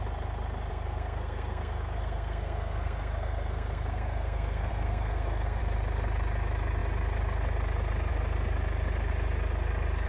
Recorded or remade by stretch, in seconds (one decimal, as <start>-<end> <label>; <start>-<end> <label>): 0.0-0.7 recorded; 0.7-5.6 remade; 5.6-10.1 recorded